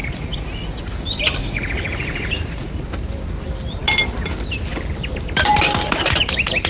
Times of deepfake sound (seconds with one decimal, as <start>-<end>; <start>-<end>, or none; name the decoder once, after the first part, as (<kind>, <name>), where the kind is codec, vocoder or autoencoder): 0.0-0.8 (vocoder, Vocos); 1.4-2.8